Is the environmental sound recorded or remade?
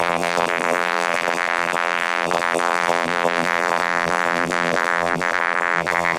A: remade